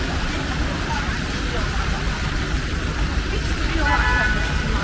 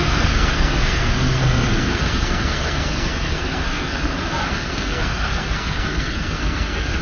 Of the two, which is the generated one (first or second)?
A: second